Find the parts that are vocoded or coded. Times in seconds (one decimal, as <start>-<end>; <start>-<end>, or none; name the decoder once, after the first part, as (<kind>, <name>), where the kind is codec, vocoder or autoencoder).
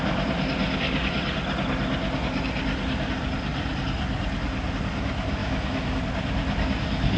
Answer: 5.4-6.0 (autoencoder, DAC-VAE)